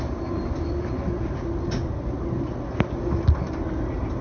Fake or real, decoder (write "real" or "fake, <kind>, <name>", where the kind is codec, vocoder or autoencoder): real